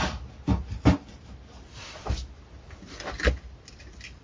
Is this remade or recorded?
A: recorded